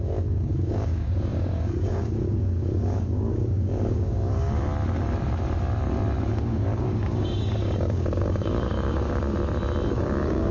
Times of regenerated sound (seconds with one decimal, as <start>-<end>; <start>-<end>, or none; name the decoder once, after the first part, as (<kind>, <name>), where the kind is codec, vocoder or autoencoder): 0.0-4.7 (codec, DAC); 6.3-9.3; 9.9-10.5